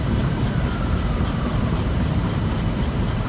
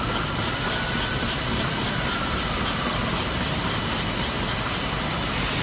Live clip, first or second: second